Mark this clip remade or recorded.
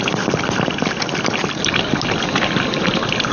recorded